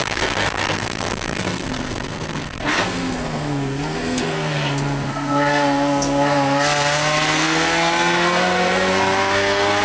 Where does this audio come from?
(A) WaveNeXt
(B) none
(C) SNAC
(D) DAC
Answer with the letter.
C